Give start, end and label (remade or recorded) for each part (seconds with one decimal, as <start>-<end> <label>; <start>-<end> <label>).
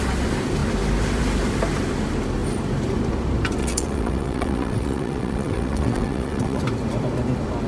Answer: 0.0-3.6 recorded; 3.6-6.6 remade; 6.6-7.7 recorded